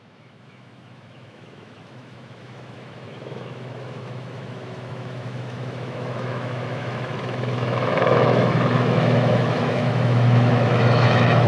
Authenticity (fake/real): fake